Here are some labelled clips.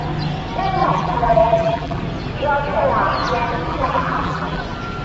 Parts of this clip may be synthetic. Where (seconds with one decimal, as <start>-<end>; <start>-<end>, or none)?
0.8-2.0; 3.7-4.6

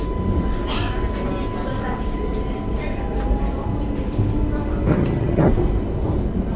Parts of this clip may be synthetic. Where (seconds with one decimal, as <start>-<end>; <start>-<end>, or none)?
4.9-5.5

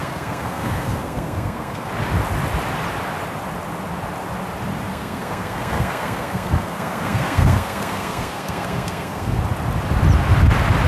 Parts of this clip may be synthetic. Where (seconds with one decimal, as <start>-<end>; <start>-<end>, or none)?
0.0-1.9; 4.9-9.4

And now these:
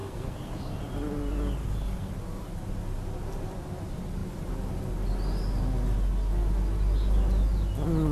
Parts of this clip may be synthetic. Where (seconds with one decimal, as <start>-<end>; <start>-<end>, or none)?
0.0-0.8; 1.6-2.1

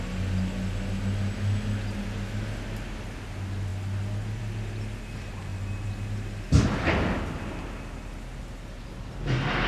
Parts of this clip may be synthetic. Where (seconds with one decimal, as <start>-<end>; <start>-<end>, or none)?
none

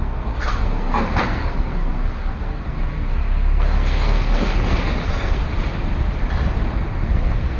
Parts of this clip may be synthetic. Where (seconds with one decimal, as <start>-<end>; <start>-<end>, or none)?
0.0-5.4; 6.7-7.6

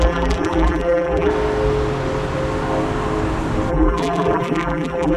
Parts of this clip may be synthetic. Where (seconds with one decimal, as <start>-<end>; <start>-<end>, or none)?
0.0-1.3; 3.7-5.2

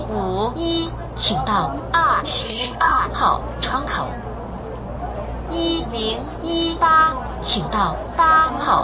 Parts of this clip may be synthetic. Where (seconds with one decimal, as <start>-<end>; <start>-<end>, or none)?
2.4-3.0